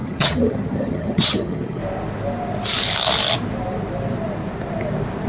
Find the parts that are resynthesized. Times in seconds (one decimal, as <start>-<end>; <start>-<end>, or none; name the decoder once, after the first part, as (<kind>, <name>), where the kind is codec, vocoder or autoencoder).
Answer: 0.0-1.8 (vocoder, HiFi-GAN)